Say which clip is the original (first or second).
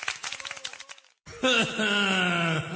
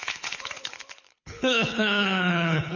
first